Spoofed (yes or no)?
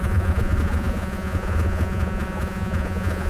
yes